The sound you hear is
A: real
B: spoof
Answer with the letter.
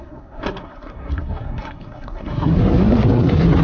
B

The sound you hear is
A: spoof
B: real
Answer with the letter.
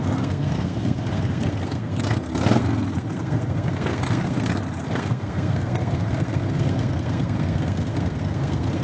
A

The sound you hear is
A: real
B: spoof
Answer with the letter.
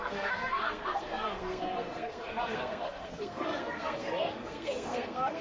B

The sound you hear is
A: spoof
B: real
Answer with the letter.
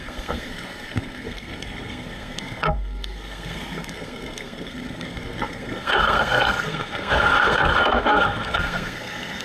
A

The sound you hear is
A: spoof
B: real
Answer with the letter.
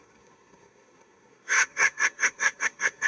A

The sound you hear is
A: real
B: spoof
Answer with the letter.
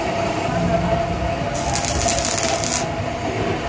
A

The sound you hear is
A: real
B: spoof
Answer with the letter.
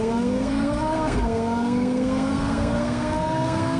B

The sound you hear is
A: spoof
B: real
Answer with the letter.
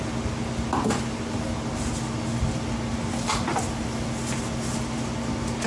B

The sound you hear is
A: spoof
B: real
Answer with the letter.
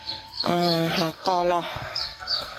A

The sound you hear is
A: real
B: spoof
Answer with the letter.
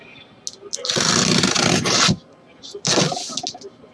A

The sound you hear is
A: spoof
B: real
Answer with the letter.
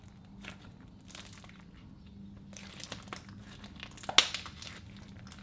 B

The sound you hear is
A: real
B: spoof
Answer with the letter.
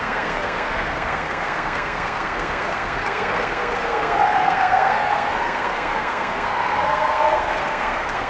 B